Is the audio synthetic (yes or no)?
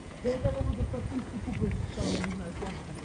yes